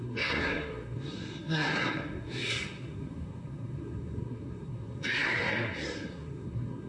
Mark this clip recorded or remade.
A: remade